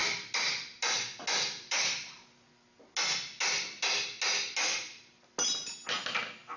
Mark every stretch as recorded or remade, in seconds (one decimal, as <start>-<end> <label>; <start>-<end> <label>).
0.0-6.6 recorded